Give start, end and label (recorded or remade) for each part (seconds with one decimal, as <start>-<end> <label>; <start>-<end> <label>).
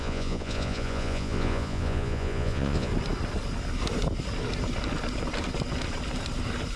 0.0-2.9 remade; 2.9-6.8 recorded